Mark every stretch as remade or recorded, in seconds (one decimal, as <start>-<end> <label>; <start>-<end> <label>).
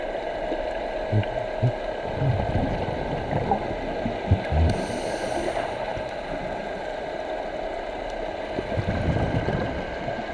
0.0-10.3 recorded